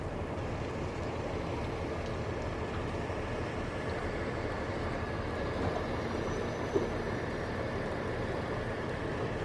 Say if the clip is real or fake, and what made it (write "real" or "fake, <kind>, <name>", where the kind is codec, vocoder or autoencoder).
fake, vocoder, BigVGAN v2